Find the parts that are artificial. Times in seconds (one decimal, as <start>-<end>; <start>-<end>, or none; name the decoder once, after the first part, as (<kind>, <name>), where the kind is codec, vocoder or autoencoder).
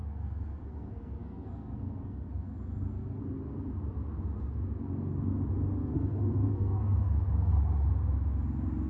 0.0-3.2 (codec, SNAC); 5.8-7.5